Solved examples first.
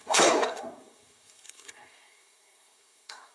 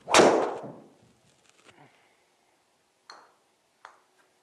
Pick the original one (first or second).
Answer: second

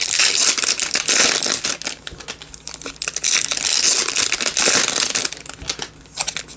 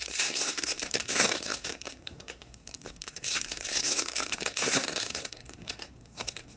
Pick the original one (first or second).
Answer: first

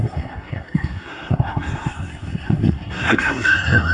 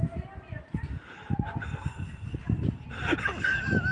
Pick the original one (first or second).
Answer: second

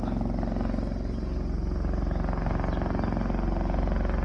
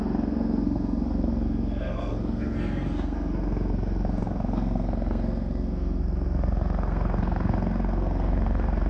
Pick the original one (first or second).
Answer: first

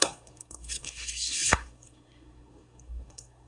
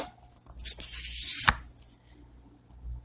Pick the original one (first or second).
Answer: second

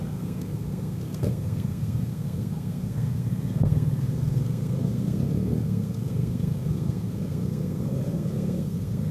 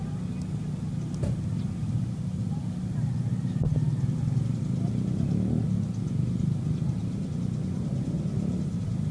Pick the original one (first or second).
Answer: second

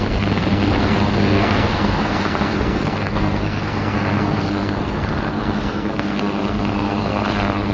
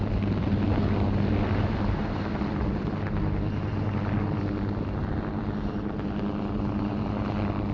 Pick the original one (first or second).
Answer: second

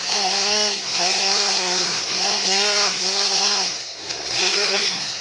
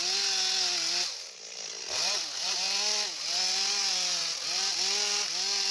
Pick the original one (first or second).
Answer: second